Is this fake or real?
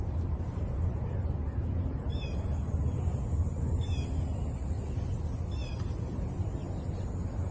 real